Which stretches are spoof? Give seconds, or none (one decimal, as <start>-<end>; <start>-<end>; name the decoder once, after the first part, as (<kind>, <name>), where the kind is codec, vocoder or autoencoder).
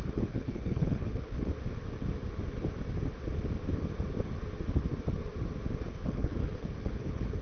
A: 0.0-1.5 (codec, HILCodec); 5.9-7.4